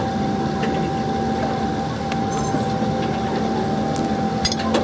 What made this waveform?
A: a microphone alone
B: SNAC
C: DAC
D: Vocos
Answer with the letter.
A